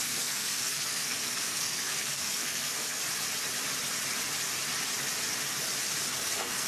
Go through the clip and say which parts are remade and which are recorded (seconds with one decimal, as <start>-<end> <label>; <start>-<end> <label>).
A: 0.0-3.0 remade; 3.0-6.1 recorded; 6.1-6.7 remade